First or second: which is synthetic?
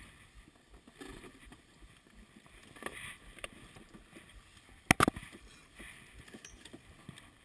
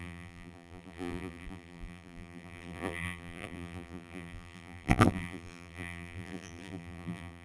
second